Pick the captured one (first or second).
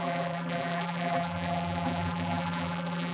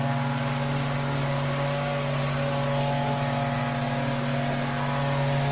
second